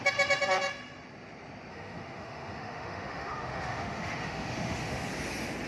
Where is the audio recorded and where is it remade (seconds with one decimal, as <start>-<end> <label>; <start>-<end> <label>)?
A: 0.0-1.7 recorded; 1.7-5.1 remade; 5.1-5.7 recorded